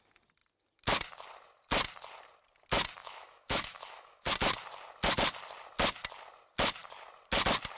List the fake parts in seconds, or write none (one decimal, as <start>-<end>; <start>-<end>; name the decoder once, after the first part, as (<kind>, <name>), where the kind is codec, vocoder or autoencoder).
3.0-4.3 (autoencoder, DAC-VAE)